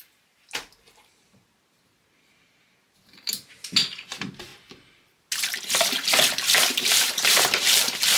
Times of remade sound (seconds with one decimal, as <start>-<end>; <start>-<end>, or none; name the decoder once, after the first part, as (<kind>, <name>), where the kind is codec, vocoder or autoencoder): 0.0-4.5 (vocoder, BigVGAN v2); 6.3-8.2